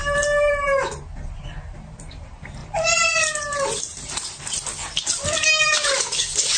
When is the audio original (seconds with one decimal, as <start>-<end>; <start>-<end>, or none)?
0.0-6.6

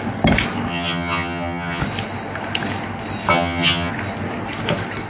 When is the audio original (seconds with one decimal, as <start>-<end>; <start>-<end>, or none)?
0.0-0.7; 1.8-3.3; 3.9-5.1